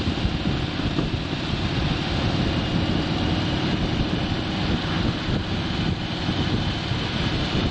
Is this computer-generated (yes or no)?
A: no